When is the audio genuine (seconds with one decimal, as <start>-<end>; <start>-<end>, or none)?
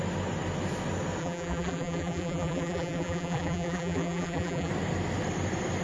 0.0-1.2; 4.7-5.8